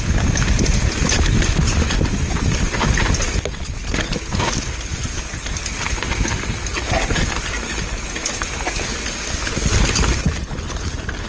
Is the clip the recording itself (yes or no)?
yes